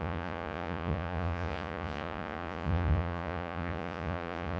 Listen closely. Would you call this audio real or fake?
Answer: fake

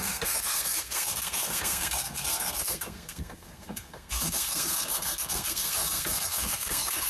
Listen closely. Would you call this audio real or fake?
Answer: fake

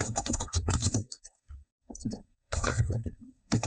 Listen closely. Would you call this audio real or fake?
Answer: fake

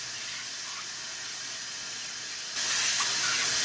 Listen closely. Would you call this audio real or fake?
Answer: real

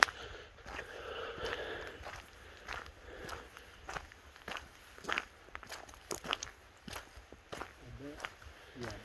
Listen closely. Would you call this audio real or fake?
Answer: fake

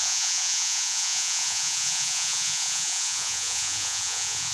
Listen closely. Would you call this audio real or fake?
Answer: fake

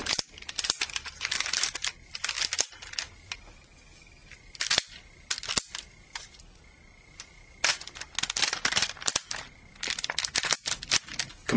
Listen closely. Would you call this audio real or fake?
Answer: real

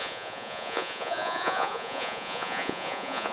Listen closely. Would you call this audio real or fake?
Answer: fake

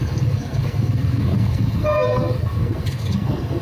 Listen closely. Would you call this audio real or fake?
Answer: fake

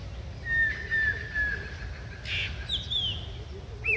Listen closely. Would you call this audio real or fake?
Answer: real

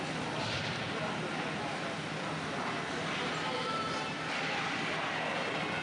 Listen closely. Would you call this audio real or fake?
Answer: real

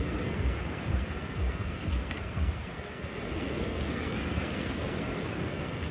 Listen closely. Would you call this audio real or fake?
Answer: fake